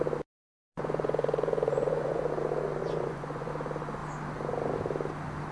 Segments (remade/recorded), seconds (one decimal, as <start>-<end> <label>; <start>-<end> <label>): 0.0-0.4 recorded; 0.4-2.2 remade; 2.2-2.8 recorded; 2.8-3.5 remade; 3.5-5.5 recorded